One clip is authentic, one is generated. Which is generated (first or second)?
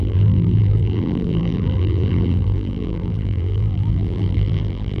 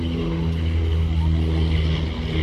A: first